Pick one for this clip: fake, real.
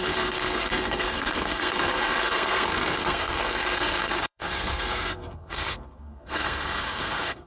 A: fake